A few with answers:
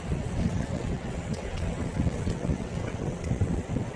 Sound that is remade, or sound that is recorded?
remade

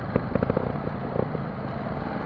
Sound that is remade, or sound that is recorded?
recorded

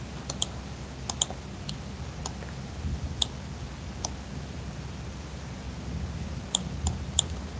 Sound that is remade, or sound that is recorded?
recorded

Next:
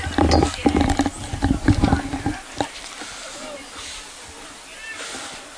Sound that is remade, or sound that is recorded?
recorded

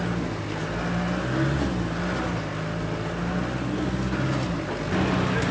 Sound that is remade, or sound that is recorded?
recorded